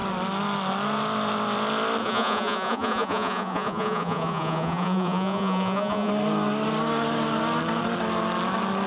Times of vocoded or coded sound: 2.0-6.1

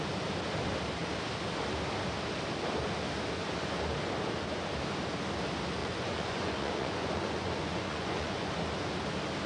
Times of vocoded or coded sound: 5.8-8.5